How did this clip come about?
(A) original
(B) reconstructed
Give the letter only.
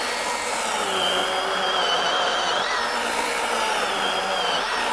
A